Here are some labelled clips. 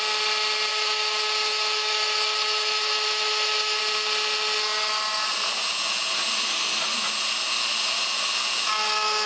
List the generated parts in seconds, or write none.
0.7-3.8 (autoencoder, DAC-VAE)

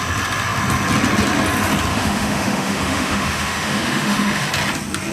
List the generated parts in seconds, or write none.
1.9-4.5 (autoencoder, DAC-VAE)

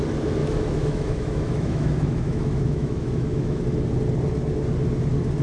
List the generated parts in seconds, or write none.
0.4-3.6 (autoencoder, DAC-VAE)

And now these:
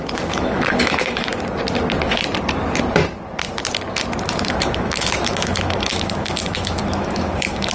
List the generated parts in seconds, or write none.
0.0-1.3 (autoencoder, DAC-VAE); 4.5-7.7

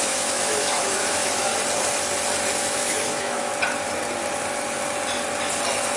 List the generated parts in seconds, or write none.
0.0-1.5 (autoencoder, DAC-VAE); 2.6-3.5

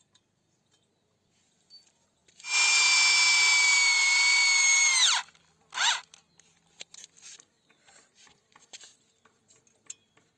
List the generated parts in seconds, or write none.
none